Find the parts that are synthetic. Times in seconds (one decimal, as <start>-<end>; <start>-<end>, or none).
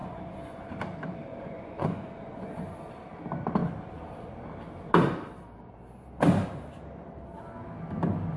0.0-0.7; 1.3-2.7